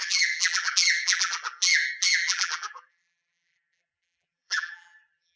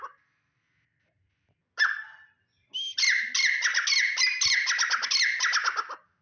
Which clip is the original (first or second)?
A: second